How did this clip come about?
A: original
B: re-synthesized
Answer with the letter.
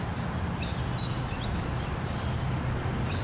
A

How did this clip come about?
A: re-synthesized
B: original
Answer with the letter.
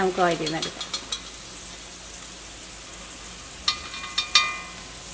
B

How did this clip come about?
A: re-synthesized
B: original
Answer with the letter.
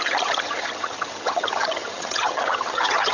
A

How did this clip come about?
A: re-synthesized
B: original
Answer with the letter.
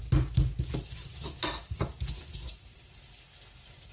B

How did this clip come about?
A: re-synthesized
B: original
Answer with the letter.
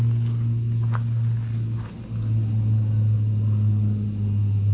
B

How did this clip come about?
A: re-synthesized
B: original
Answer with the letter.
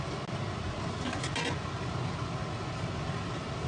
B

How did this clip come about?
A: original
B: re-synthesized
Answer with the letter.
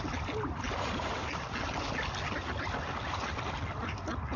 A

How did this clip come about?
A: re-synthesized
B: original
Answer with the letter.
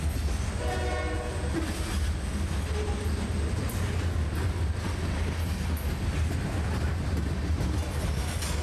B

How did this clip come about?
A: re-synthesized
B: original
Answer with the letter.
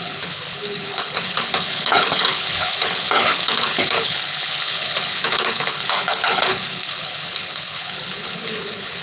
A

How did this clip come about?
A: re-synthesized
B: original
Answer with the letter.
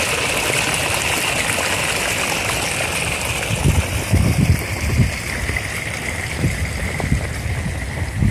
B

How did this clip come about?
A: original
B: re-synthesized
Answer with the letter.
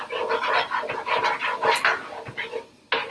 A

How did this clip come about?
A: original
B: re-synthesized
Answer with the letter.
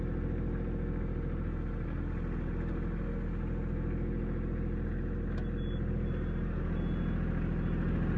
A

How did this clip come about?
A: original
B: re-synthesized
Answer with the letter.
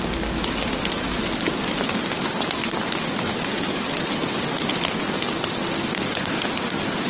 A